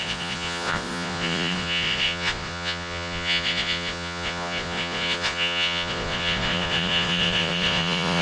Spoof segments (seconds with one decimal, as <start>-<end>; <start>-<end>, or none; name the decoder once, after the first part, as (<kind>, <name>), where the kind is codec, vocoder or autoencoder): 0.0-8.2 (vocoder, Vocos)